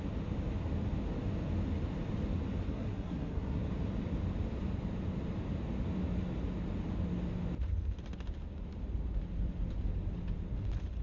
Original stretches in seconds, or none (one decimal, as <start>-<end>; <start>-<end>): 0.0-2.7; 3.7-11.0